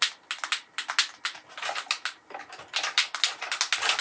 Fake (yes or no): no